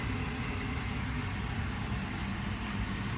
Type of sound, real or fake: fake